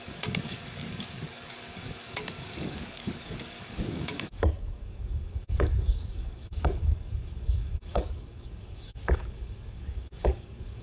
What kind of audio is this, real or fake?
fake